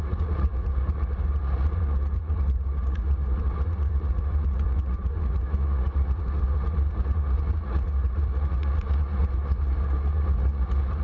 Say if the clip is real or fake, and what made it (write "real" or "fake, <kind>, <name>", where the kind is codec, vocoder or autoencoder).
fake, vocoder, Vocos